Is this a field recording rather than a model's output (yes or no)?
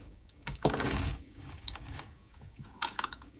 no